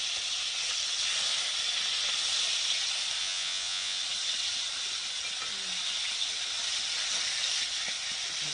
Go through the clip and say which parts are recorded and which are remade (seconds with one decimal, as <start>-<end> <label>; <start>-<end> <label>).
0.0-3.2 recorded; 3.2-4.0 remade; 4.0-8.5 recorded